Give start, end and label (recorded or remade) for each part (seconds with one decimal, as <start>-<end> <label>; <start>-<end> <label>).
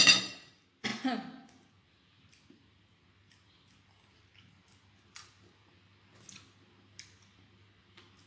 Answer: 0.0-8.3 recorded